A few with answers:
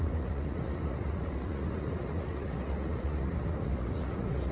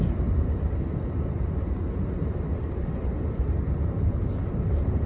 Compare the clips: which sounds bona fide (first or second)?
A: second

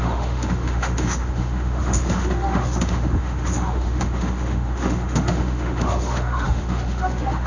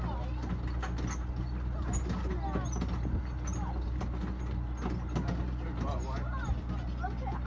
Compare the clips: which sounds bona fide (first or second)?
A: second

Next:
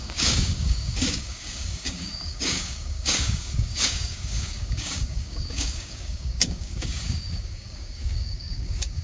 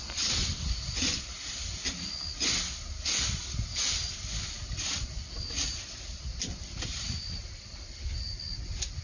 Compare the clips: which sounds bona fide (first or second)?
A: second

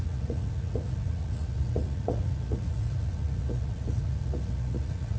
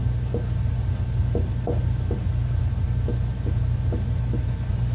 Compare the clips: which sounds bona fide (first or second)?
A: second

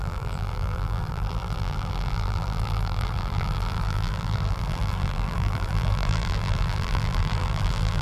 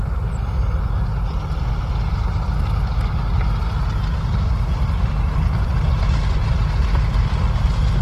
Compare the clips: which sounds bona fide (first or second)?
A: second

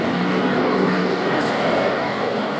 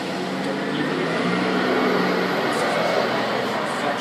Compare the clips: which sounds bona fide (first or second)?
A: second